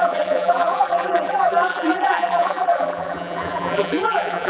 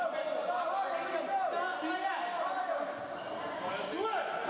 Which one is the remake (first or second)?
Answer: first